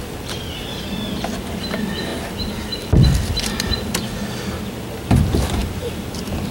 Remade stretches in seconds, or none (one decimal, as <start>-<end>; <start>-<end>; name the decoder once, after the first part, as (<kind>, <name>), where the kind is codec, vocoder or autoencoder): 5.6-6.5 (vocoder, BigVGAN v2)